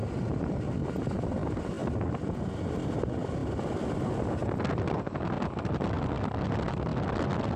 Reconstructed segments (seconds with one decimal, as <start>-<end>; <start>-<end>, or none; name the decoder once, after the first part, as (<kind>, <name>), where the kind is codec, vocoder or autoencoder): none